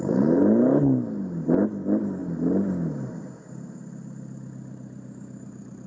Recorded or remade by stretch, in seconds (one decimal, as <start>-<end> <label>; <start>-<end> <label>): 0.0-5.9 recorded